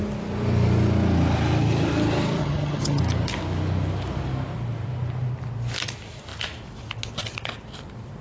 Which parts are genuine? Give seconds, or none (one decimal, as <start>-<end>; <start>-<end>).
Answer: 0.0-2.4; 3.0-8.2